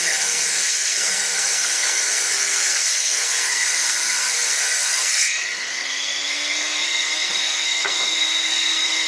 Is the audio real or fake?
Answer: fake